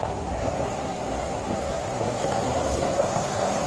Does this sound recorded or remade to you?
remade